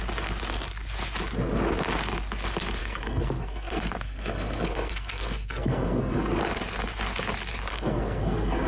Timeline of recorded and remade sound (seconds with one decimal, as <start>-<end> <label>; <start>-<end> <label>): 0.0-2.8 recorded; 2.8-6.4 remade; 6.4-7.7 recorded; 7.7-8.7 remade